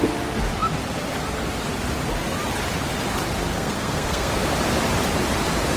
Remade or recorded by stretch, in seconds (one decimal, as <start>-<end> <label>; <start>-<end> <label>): 0.0-3.4 recorded; 3.4-4.4 remade; 4.4-5.8 recorded